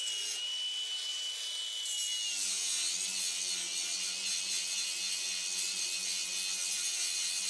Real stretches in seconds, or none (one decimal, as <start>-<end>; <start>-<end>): 0.0-7.5